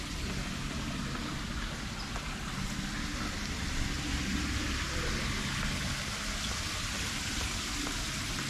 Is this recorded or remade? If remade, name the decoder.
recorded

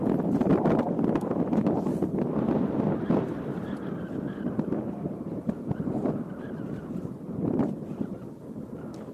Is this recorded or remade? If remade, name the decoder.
recorded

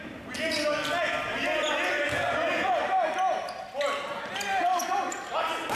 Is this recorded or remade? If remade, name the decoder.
recorded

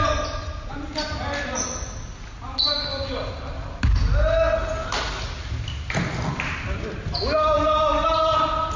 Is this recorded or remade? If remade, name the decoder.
recorded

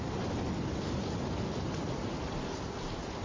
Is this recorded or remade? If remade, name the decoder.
recorded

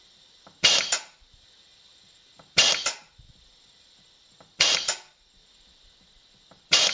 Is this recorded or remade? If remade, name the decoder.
remade, vocoder, BigVGAN v2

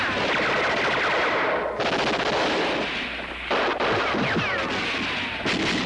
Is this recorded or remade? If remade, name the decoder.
recorded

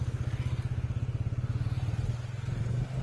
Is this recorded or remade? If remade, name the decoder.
recorded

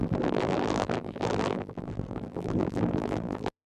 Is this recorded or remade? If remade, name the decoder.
remade, vocoder, BigVGAN v2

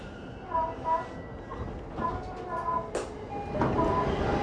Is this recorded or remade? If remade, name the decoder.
recorded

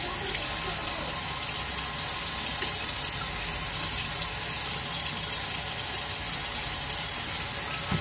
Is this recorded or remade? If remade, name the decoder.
recorded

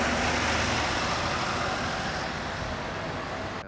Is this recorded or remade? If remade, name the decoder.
recorded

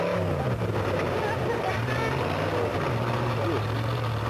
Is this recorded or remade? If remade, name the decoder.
recorded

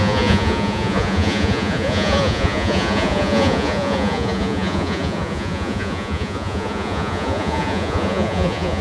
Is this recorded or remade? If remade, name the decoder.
remade, vocoder, Vocos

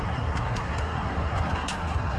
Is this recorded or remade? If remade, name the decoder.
remade, codec, SNAC